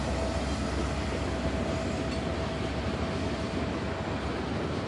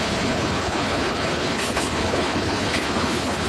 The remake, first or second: second